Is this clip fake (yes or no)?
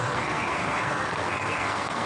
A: yes